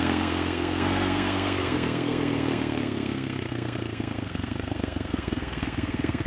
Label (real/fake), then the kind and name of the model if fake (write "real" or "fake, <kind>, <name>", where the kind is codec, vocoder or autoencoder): fake, codec, SNAC